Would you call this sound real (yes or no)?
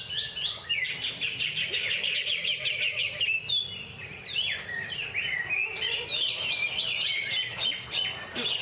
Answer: yes